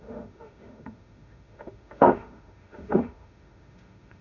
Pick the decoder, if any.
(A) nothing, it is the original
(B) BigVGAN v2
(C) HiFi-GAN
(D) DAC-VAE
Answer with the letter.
D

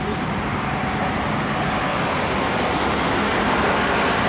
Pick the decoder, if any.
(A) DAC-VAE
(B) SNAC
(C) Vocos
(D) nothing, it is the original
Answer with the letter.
D